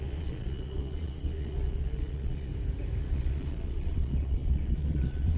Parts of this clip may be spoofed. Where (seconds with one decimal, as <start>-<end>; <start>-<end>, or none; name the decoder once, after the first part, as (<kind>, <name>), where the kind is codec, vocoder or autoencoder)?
0.0-2.5 (vocoder, Vocos); 3.0-5.4